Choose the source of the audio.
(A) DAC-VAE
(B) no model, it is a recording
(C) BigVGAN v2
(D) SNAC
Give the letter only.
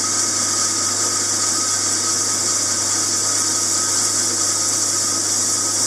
B